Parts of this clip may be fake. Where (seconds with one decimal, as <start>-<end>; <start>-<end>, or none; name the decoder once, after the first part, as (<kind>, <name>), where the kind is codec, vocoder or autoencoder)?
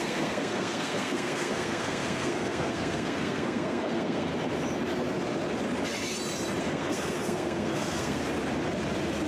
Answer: 0.0-4.3 (codec, SNAC); 6.6-8.2